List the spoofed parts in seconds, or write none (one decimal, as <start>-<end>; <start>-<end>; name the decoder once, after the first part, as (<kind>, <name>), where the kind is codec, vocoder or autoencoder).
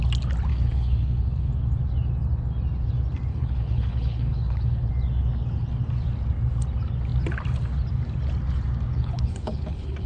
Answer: 0.5-1.5 (codec, HILCodec); 3.3-4.9; 8.9-10.1